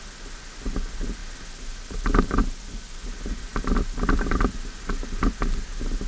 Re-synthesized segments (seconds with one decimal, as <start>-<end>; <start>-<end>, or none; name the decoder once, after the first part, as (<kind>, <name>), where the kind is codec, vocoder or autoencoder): none

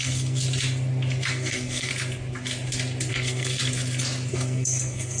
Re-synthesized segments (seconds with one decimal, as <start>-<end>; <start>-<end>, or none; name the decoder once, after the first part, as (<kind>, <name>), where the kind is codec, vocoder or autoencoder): 0.0-0.4 (codec, SNAC); 1.3-1.9; 3.1-3.6; 4.3-5.2